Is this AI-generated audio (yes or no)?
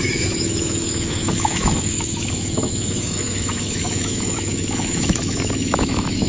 yes